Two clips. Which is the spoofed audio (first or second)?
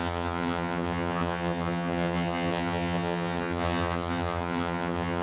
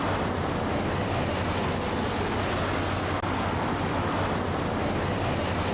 first